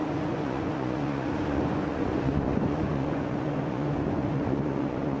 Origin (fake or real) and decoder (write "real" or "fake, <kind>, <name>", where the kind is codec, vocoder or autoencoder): fake, vocoder, Vocos